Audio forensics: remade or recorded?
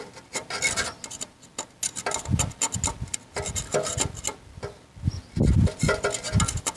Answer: recorded